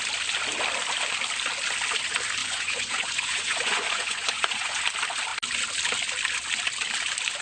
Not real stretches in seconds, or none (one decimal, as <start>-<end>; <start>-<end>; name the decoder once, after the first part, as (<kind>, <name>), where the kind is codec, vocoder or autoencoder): 2.4-4.8 (vocoder, Vocos)